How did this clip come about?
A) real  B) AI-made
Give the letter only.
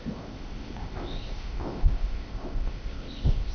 B